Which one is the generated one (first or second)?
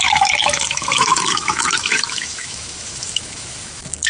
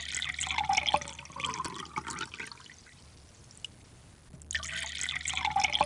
first